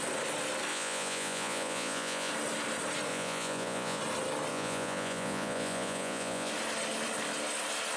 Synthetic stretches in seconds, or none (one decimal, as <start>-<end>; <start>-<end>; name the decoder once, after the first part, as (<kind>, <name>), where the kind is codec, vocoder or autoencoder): 0.7-2.3 (vocoder, Vocos); 3.1-4.0; 4.5-6.5